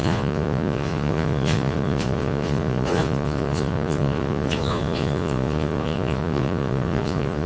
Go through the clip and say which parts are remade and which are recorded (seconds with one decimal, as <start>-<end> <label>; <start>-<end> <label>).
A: 0.0-7.5 remade